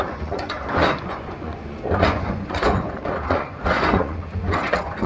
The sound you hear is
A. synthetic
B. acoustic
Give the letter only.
A